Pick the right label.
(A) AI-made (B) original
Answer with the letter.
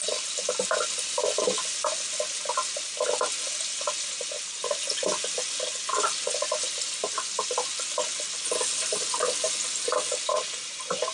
B